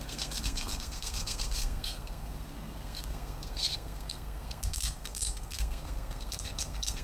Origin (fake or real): fake